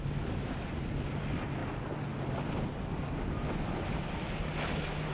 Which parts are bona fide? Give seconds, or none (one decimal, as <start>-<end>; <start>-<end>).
0.0-5.1